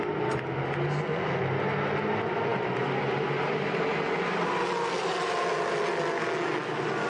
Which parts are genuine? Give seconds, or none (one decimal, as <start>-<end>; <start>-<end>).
0.0-7.1